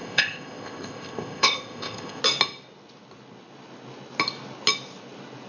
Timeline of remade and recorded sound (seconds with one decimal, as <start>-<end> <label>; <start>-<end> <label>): 0.0-2.2 remade; 2.2-5.5 recorded